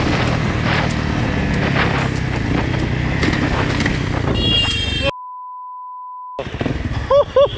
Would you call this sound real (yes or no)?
yes